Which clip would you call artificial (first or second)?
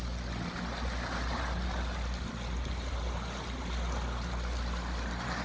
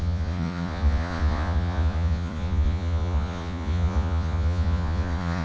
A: second